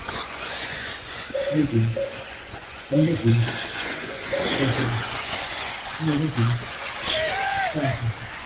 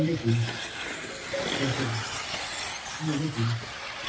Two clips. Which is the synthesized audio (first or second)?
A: first